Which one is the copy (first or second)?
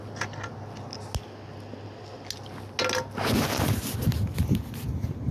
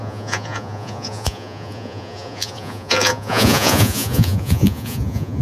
second